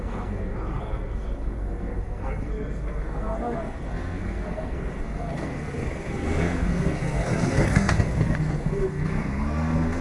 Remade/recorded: remade